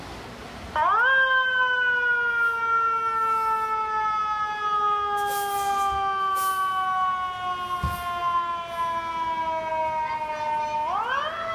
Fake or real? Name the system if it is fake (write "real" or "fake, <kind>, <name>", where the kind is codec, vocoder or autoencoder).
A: real